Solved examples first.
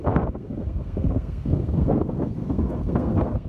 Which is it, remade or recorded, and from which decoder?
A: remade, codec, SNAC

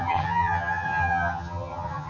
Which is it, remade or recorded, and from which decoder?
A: remade, vocoder, HiFi-GAN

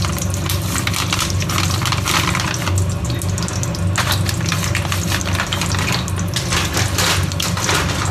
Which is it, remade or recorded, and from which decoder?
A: recorded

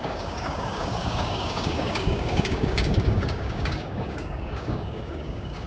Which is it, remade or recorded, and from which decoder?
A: remade, codec, DAC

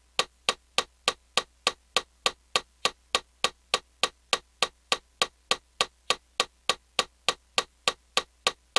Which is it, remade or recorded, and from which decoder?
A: recorded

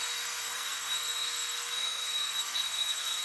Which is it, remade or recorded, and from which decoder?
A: remade, codec, SNAC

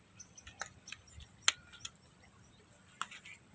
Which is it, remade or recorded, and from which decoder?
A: recorded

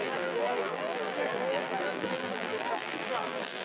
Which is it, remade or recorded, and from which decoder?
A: remade, vocoder, BigVGAN v2